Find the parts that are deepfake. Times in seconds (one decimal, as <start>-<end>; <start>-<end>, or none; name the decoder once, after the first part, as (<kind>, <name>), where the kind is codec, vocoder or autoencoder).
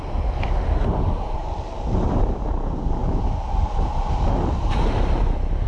none